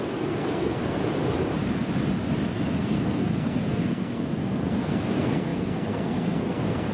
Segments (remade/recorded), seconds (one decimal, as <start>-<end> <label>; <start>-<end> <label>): 0.0-1.0 remade; 1.0-2.8 recorded; 2.8-6.9 remade